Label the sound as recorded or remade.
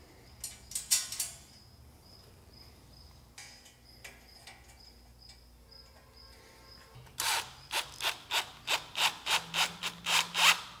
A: recorded